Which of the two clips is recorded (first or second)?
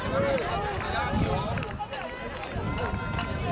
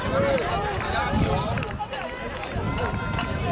first